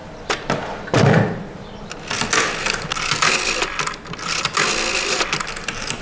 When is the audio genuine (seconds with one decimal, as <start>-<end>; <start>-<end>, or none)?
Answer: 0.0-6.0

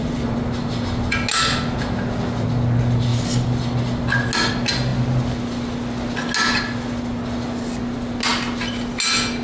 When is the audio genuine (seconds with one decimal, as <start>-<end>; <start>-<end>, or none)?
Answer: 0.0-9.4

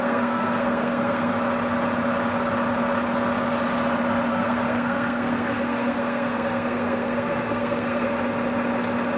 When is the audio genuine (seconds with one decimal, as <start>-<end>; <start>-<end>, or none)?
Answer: 1.3-4.3; 8.1-9.2